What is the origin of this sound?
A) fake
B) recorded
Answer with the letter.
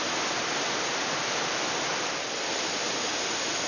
B